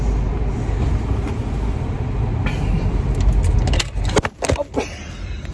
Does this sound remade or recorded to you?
recorded